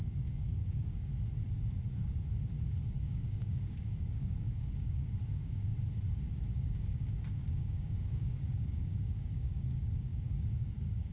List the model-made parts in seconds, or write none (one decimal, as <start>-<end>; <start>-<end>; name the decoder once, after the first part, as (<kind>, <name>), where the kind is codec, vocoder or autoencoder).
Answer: 0.0-1.1 (codec, DAC); 3.0-5.7; 6.5-11.1